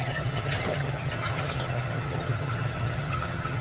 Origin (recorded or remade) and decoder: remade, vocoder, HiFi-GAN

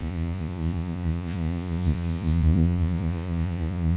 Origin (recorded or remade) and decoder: remade, vocoder, Vocos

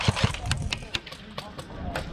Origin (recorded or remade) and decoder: recorded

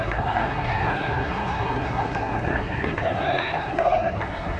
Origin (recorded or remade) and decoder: remade, codec, SNAC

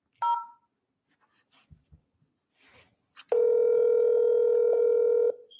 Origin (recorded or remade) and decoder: recorded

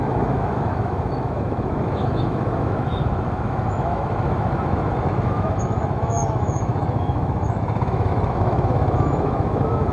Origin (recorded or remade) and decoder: remade, autoencoder, DAC-VAE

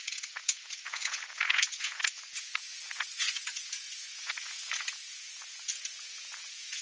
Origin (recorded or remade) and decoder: remade, vocoder, Vocos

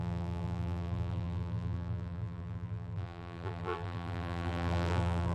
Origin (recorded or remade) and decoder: remade, vocoder, BigVGAN v2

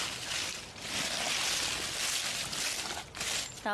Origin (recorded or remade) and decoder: recorded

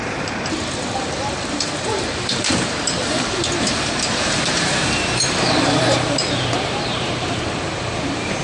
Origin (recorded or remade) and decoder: remade, vocoder, BigVGAN v2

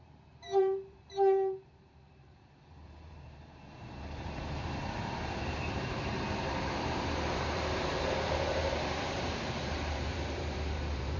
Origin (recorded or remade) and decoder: remade, vocoder, BigVGAN v2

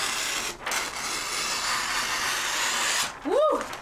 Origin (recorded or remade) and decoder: recorded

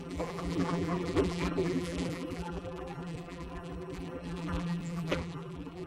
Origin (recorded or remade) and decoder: remade, vocoder, BigVGAN v2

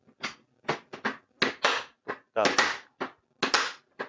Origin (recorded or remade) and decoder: recorded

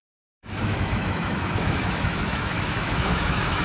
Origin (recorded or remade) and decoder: remade, autoencoder, DAC-VAE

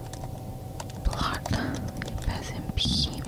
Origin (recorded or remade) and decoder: remade, vocoder, BigVGAN v2